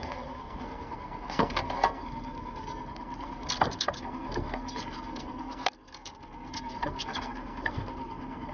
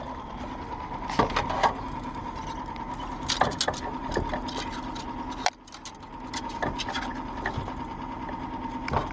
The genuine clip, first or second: second